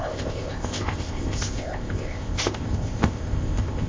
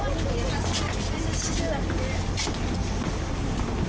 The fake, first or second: first